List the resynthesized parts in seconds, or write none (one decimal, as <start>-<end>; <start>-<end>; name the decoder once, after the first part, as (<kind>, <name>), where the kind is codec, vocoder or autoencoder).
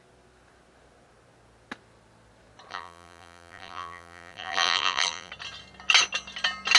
2.7-5.3 (vocoder, BigVGAN v2)